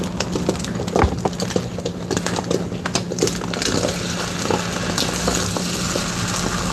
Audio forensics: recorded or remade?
recorded